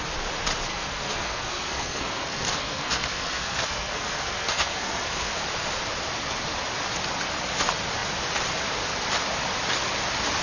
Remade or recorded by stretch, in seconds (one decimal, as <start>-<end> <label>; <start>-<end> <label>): 0.0-0.7 recorded; 0.7-5.4 remade; 5.4-10.4 recorded